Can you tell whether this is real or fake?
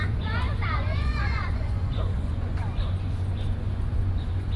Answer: fake